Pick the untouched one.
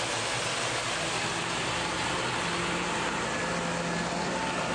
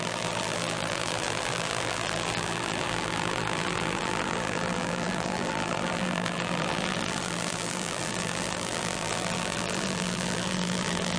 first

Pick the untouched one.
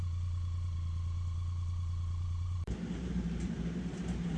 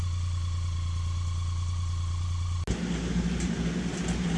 second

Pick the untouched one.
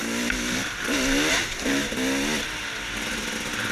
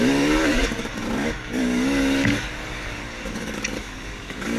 first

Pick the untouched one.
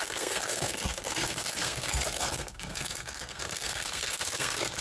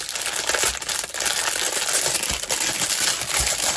second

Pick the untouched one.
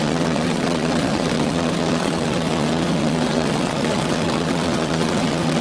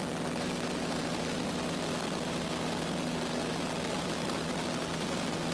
second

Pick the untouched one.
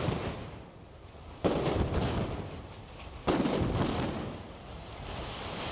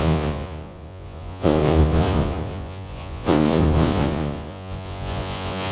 first